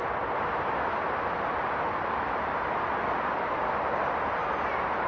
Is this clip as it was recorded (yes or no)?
yes